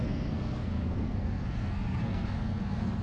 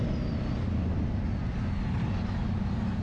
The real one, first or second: second